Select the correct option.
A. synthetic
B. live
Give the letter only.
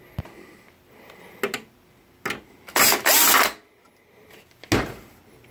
B